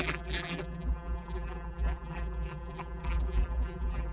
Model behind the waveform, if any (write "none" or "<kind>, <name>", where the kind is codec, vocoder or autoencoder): vocoder, BigVGAN v2